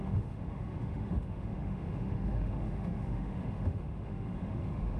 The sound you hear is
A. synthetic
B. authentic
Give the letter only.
A